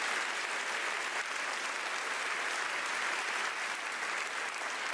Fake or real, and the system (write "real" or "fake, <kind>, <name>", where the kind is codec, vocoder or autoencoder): real